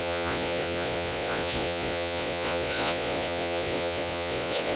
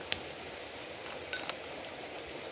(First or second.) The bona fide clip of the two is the second